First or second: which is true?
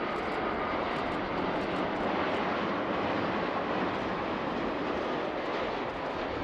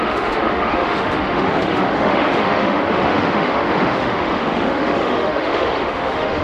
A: first